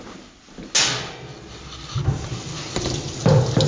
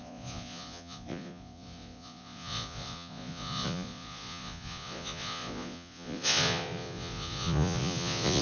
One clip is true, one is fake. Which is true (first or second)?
first